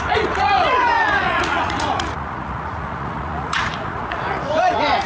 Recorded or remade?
remade